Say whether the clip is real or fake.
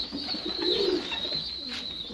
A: real